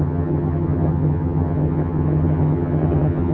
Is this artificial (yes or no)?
yes